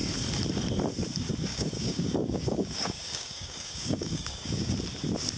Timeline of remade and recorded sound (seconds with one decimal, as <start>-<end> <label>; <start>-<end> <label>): 0.0-1.5 recorded; 1.5-4.7 remade; 4.7-5.4 recorded